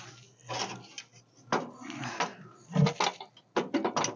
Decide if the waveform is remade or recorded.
recorded